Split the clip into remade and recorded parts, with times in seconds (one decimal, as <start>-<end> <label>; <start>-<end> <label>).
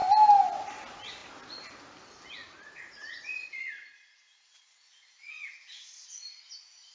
0.0-2.4 recorded; 2.4-6.5 remade; 6.5-6.9 recorded